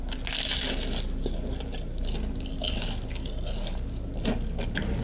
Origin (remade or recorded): recorded